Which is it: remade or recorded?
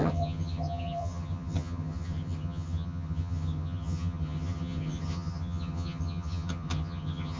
remade